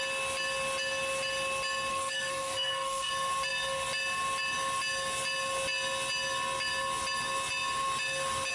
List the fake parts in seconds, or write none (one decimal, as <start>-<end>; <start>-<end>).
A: 1.9-3.1